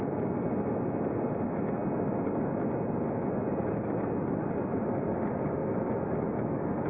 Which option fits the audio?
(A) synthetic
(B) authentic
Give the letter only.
B